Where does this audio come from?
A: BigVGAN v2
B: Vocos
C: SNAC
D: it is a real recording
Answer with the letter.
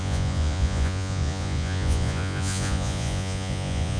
B